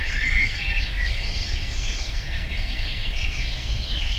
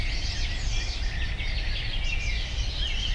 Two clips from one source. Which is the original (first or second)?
second